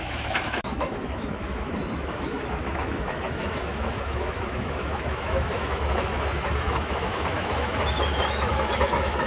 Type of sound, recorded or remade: remade